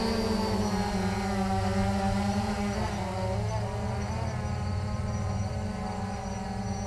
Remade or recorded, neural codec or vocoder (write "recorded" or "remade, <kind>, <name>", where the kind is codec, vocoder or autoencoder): recorded